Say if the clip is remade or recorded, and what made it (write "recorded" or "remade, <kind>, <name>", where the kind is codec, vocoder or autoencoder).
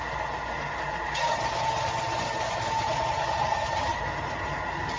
recorded